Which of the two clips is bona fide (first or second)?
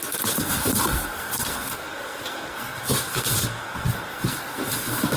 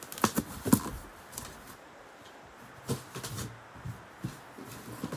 second